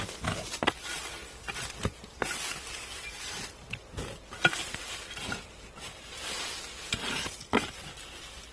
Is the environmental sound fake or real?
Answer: real